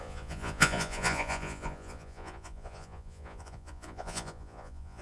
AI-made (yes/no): yes